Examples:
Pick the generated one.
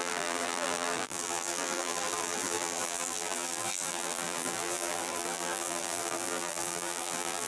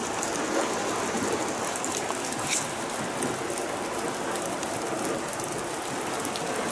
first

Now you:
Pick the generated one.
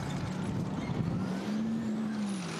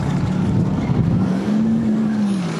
second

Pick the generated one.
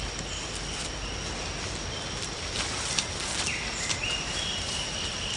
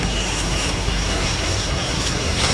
second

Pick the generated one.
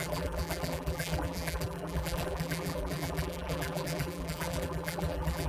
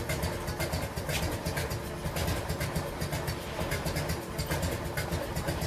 first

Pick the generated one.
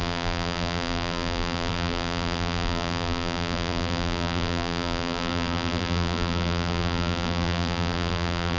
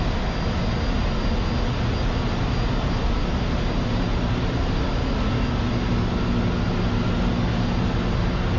first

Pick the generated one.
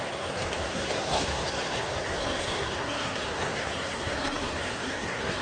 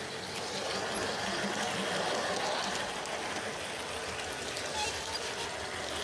first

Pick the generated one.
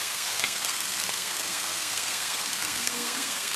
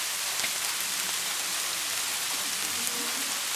first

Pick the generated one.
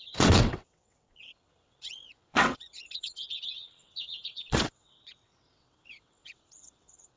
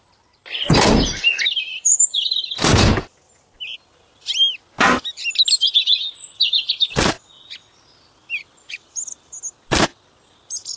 first